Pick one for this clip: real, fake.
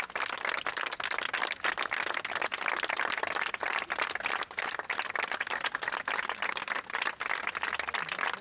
real